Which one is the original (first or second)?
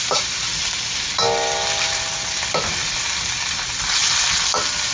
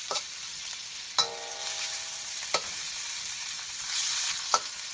first